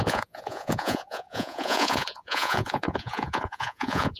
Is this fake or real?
fake